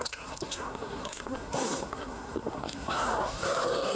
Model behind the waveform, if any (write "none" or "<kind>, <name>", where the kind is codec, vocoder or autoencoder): codec, SNAC